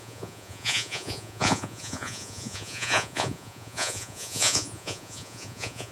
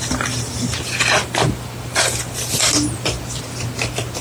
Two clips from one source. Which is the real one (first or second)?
second